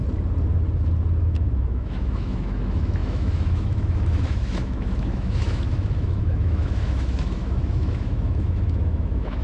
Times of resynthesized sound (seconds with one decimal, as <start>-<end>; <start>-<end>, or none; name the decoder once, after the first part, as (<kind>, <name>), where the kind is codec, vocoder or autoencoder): 1.2-9.4 (autoencoder, DAC-VAE)